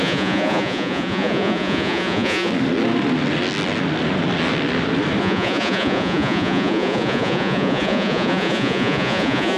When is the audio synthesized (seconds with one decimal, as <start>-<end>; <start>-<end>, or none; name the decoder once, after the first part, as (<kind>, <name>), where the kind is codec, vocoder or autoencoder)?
0.0-2.5 (vocoder, Vocos); 5.2-9.6